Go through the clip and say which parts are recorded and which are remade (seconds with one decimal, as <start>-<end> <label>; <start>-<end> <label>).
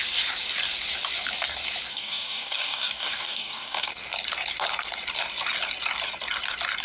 0.0-1.9 recorded; 1.9-3.9 remade; 3.9-6.8 recorded